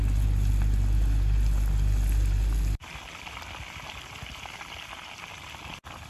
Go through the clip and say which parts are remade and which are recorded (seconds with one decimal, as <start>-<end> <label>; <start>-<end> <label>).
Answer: 0.0-6.1 recorded